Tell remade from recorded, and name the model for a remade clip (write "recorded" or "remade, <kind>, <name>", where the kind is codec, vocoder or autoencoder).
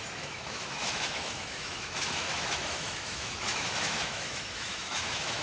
remade, autoencoder, DAC-VAE